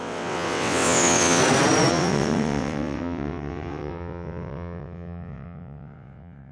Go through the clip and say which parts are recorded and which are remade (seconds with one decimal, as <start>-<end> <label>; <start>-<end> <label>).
0.0-1.4 remade; 1.4-1.9 recorded; 1.9-6.5 remade